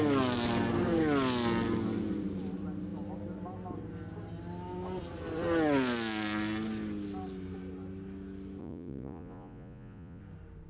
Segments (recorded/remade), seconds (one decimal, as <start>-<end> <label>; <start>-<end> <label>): 0.0-8.6 recorded; 8.6-10.2 remade; 10.2-10.7 recorded